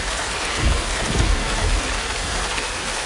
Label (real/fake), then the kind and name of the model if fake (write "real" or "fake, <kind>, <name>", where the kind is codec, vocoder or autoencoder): fake, codec, SNAC